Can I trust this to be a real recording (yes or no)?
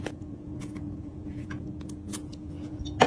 no